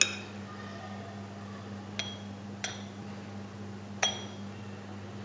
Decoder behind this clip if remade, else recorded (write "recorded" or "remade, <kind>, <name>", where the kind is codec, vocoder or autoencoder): recorded